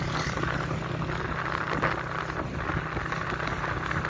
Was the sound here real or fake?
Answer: real